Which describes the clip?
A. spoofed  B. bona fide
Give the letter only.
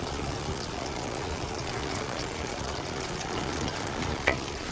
A